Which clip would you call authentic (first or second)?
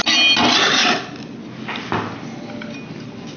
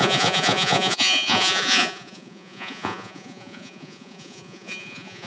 first